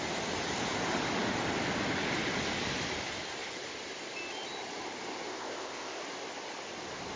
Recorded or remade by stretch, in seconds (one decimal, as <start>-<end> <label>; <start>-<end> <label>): 0.0-5.3 recorded; 5.3-6.0 remade; 6.0-7.2 recorded